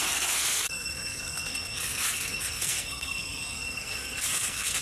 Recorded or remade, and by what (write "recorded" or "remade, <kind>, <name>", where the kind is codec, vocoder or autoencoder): remade, codec, SNAC